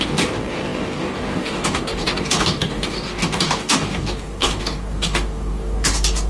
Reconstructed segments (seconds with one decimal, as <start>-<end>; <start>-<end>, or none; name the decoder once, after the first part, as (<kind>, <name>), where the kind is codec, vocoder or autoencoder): 0.0-6.3 (codec, DAC)